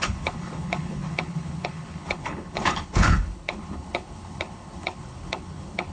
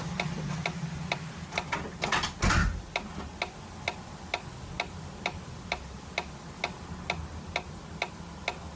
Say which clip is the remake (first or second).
first